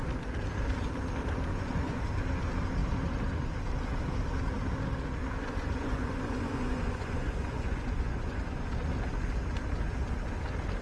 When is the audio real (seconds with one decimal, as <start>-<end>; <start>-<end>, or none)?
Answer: 0.0-1.5; 2.0-5.4; 8.7-10.8